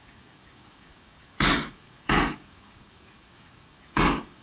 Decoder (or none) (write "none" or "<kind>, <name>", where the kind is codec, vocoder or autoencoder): codec, DAC